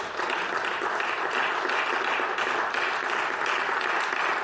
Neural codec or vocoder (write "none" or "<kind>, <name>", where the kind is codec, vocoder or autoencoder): none